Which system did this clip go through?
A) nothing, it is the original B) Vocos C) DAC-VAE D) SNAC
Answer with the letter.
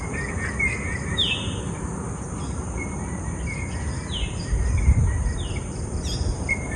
A